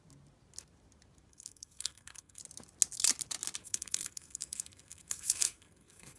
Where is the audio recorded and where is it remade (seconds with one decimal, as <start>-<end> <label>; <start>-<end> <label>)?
0.0-1.3 recorded; 1.3-2.4 remade; 2.4-3.6 recorded; 3.6-6.2 remade